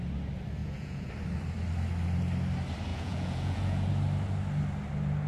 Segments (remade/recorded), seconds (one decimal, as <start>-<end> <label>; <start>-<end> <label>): 0.0-0.6 recorded; 0.6-1.1 remade; 1.1-2.9 recorded; 2.9-3.9 remade; 3.9-5.3 recorded